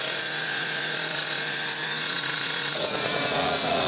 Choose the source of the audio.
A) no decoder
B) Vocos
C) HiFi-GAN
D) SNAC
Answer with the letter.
B